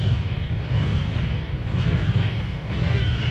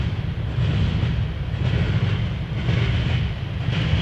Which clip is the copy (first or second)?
first